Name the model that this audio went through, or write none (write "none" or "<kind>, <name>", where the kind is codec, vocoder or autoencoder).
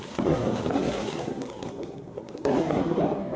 codec, SNAC